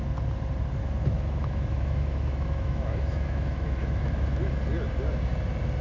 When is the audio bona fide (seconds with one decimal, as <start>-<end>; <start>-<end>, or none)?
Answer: 0.0-1.0; 4.5-5.8